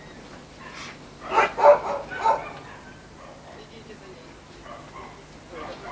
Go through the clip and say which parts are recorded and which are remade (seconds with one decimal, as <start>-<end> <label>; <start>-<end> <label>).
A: 0.0-5.9 recorded